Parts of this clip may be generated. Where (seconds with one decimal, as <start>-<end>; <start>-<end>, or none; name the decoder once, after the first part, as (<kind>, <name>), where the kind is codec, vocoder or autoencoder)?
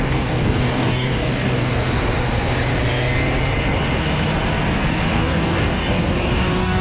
0.0-1.7 (codec, DAC); 5.1-6.8